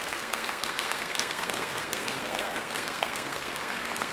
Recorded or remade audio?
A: remade